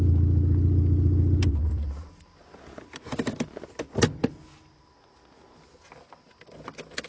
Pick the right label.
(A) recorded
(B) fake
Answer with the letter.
A